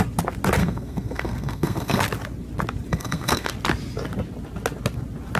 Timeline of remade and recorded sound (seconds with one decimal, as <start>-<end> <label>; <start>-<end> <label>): 0.0-0.6 recorded; 0.6-2.0 remade; 2.0-2.9 recorded; 2.9-3.5 remade; 3.5-5.4 recorded